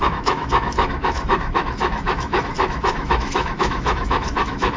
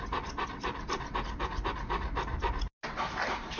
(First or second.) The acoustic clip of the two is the second